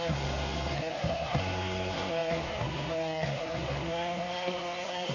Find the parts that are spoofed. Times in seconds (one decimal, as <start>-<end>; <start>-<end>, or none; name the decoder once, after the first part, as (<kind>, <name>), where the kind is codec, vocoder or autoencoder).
0.0-5.1 (codec, SNAC)